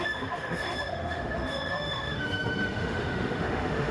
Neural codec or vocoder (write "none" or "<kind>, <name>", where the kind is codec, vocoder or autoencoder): autoencoder, DAC-VAE